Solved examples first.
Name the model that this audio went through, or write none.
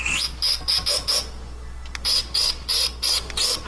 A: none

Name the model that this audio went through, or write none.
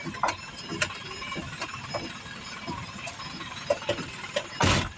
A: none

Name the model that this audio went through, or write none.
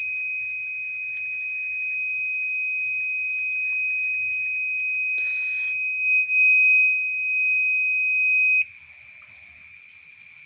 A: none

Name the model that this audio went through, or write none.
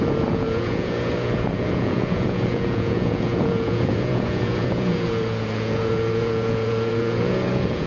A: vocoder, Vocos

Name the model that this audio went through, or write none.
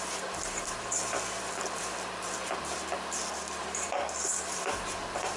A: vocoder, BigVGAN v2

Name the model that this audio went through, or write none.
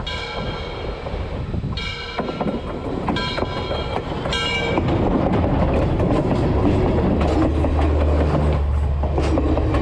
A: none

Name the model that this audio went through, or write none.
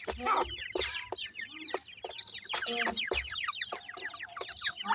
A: none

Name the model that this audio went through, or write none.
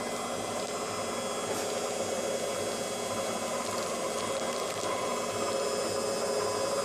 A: none